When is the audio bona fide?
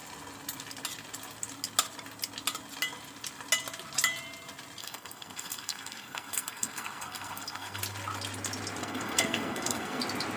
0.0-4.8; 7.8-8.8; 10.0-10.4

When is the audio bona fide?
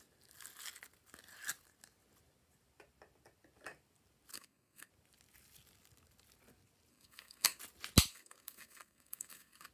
0.0-4.3; 4.9-6.9; 7.6-8.1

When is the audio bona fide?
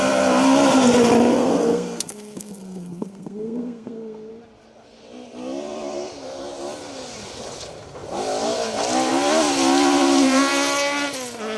0.0-1.3; 4.3-11.6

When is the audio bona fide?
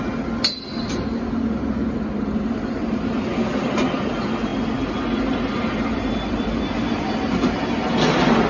0.0-8.5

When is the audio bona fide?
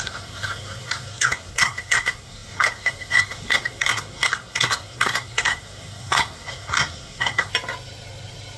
7.5-8.6